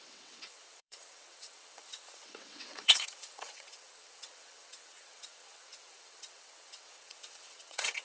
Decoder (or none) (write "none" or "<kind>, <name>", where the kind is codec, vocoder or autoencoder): vocoder, WaveNeXt